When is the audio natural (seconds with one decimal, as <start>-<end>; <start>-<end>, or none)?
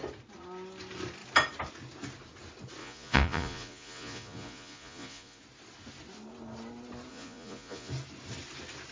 0.0-2.8; 5.4-7.1; 7.9-8.9